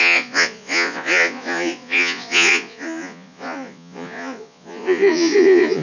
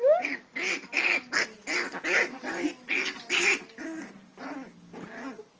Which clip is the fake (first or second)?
first